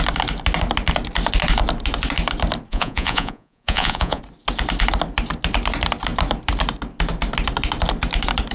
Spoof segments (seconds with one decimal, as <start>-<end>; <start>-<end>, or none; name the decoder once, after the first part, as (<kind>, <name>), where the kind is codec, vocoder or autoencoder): 2.7-4.2 (vocoder, Vocos)